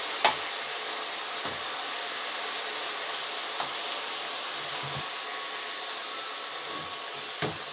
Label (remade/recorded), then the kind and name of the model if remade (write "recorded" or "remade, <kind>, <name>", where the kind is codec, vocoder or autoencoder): recorded